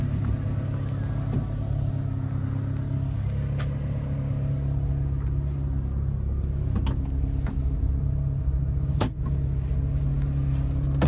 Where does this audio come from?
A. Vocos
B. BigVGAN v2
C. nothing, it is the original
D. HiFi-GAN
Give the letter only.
C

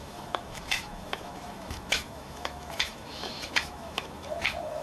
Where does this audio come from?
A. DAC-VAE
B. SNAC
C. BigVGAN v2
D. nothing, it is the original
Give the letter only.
A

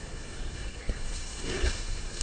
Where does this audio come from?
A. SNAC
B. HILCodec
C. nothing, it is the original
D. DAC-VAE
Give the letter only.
A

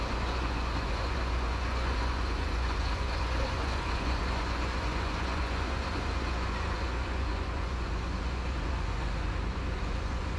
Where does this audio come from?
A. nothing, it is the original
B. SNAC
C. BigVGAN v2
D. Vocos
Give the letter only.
D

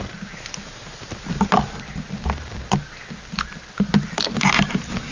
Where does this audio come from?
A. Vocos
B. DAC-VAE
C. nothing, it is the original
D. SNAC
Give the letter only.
C